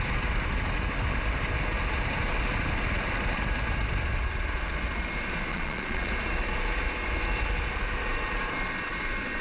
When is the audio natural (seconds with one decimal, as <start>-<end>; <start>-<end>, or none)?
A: 0.0-5.5; 6.1-9.4